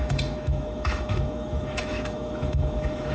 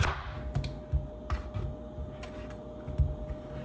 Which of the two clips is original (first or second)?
second